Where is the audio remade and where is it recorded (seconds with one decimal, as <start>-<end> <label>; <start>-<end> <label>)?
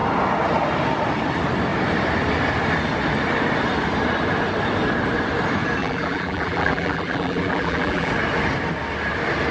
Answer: 0.0-5.8 recorded; 5.8-8.1 remade; 8.1-9.5 recorded